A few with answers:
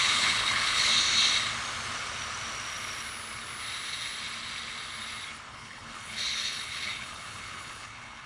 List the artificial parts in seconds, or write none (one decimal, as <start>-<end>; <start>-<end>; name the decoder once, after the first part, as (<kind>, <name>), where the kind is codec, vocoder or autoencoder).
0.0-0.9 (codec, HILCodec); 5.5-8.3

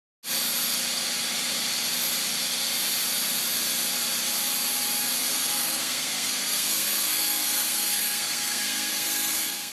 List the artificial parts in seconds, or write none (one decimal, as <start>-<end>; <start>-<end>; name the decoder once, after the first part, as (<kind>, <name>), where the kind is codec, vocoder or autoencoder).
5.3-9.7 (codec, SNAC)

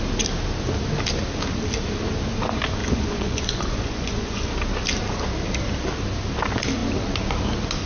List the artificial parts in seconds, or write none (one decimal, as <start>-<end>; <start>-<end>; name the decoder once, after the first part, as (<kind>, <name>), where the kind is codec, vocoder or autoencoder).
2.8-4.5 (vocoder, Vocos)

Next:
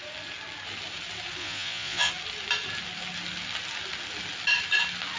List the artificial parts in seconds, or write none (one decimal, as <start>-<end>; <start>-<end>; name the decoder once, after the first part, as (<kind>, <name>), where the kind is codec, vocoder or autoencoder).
1.4-2.1 (vocoder, Vocos)

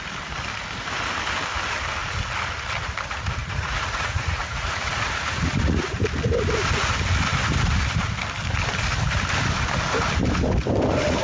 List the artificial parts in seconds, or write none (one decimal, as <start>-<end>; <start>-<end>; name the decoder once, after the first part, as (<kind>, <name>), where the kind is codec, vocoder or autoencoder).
3.4-5.8 (vocoder, Vocos)